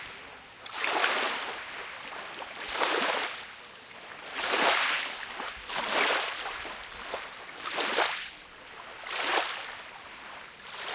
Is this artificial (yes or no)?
no